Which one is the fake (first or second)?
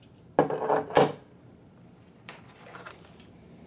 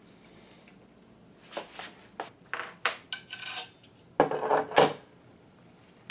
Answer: first